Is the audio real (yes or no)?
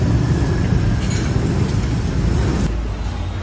yes